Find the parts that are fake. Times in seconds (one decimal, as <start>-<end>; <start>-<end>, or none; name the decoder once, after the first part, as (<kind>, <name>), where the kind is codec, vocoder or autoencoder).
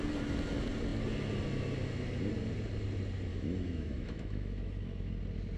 3.3-5.1 (autoencoder, DAC-VAE)